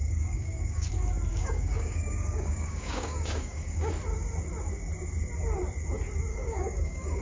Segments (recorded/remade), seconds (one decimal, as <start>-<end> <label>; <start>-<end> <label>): 0.0-0.9 remade; 0.9-1.3 recorded; 1.3-3.9 remade; 3.9-6.3 recorded; 6.3-7.2 remade